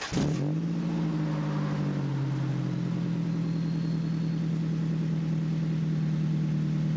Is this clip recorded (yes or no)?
yes